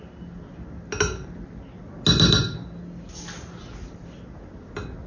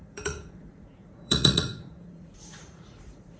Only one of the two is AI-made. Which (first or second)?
second